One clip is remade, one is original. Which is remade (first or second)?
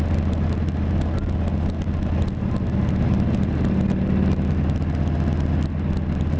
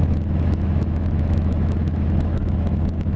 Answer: second